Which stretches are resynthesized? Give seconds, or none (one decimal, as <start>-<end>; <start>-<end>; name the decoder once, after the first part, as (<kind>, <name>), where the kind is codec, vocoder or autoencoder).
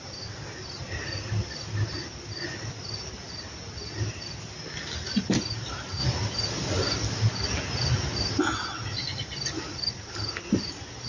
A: none